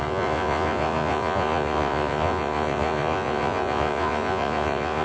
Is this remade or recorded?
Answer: remade